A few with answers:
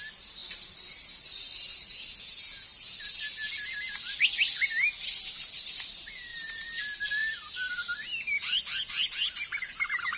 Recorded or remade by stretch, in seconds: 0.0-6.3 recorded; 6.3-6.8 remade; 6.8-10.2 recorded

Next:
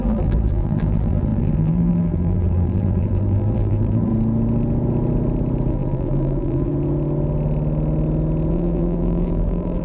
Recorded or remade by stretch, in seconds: 0.0-4.1 remade; 4.1-5.7 recorded; 5.7-6.7 remade; 6.7-8.5 recorded; 8.5-9.8 remade